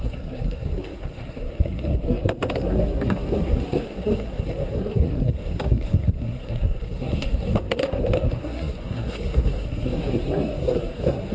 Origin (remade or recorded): remade